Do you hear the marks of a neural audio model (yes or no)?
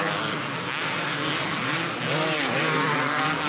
no